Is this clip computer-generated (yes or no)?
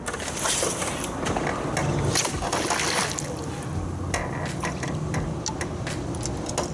no